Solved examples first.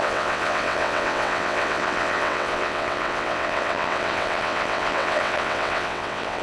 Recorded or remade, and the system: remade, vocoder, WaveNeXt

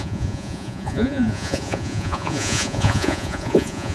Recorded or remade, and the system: remade, vocoder, Vocos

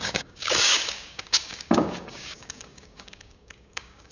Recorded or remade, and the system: remade, codec, DAC